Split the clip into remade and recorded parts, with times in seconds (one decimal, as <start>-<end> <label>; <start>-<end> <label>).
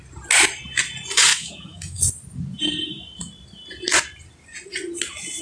0.0-1.3 recorded; 1.3-2.0 remade; 2.0-5.4 recorded